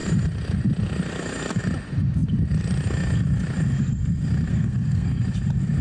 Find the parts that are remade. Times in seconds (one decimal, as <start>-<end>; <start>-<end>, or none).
4.5-5.2

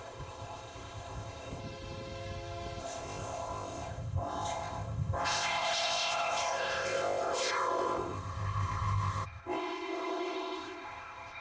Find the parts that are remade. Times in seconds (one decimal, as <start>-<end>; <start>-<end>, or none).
0.0-1.6; 2.8-11.4

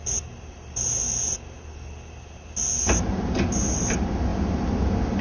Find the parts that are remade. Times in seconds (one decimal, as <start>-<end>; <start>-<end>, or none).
none

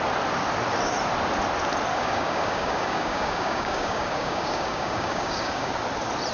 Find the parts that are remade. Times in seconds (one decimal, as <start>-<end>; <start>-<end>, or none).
1.9-5.7

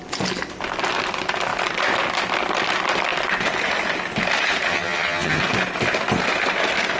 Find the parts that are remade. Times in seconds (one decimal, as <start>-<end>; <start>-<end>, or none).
4.7-5.4

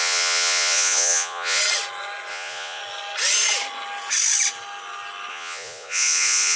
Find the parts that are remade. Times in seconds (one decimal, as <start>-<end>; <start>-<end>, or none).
0.0-1.6; 2.3-2.8; 5.3-6.6

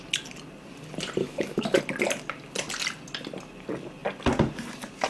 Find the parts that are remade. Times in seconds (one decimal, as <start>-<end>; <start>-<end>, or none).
1.2-1.8